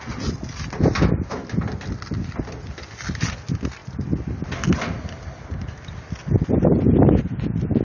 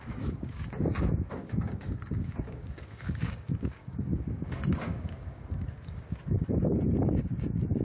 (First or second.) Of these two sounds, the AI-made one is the second